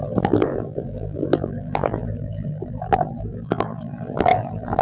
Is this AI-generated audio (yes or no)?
yes